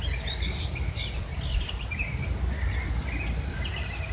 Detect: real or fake real